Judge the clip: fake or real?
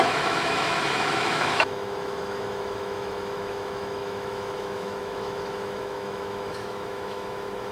fake